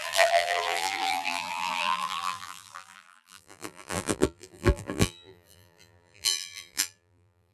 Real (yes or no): no